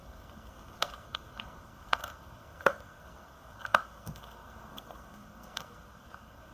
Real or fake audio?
fake